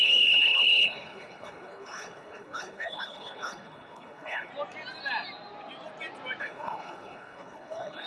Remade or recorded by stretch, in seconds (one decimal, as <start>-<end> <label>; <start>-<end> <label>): 0.0-4.5 remade; 4.5-6.4 recorded; 6.4-8.1 remade